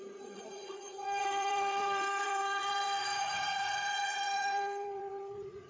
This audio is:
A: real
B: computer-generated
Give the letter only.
B